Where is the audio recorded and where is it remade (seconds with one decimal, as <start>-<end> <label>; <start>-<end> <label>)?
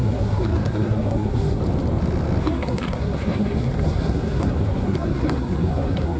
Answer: 0.0-1.6 remade; 1.6-2.4 recorded; 2.4-6.2 remade